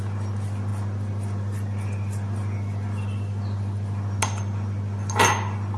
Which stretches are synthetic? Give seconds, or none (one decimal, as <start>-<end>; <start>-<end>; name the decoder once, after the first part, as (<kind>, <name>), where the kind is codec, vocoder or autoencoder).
none